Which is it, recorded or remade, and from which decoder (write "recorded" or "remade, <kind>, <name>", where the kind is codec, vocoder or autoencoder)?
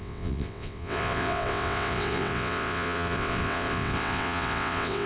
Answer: remade, vocoder, WaveNeXt